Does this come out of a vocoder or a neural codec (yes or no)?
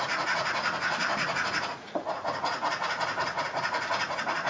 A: yes